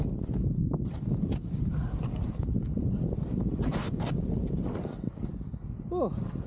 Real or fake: real